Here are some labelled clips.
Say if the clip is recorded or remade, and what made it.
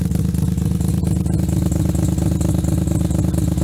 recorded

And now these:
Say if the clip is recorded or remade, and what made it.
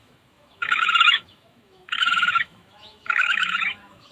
remade, autoencoder, DAC-VAE